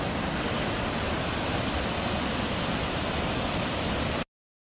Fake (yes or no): no